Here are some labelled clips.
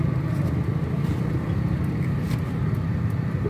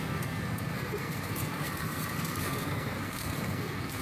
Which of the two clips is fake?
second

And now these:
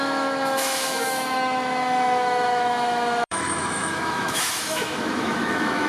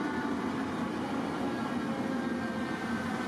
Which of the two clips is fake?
first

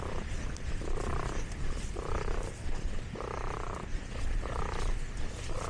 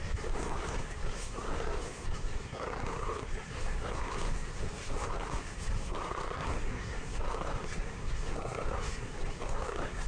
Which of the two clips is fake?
second